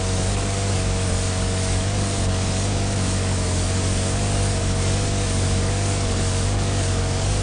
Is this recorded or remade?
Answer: remade